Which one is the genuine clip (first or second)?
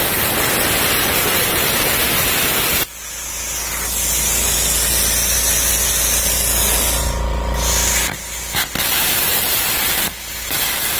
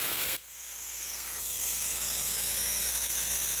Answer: first